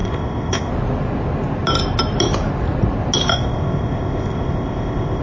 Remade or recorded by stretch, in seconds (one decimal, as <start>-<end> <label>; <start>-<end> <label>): 0.0-0.7 remade; 0.7-3.3 recorded; 3.3-5.2 remade